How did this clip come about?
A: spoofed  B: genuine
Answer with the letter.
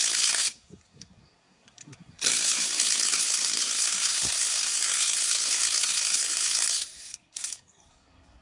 A